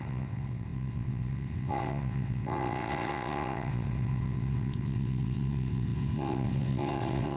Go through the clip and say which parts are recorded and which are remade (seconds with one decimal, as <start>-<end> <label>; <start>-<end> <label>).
0.0-7.4 remade